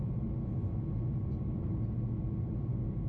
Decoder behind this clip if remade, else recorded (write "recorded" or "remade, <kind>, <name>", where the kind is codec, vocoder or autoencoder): recorded